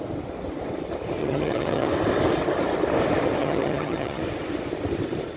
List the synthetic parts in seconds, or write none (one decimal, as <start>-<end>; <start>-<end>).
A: 1.2-1.9; 3.4-4.2